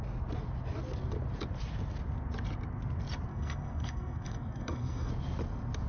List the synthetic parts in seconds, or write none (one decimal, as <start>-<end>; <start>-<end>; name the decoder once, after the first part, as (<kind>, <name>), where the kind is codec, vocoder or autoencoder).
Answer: 3.3-5.1 (codec, SNAC)